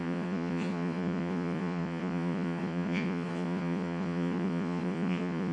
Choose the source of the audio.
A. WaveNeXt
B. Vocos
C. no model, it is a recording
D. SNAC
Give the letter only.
B